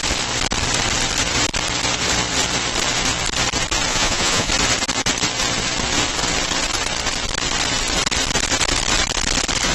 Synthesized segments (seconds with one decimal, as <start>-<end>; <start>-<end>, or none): 3.9-4.5